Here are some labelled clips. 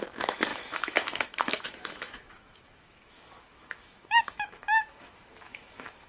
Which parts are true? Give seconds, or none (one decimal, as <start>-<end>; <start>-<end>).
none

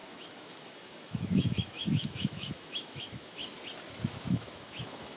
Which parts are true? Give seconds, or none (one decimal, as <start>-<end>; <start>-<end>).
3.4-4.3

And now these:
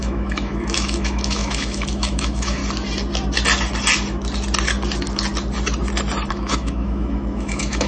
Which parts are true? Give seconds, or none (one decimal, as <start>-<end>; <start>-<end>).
2.6-6.3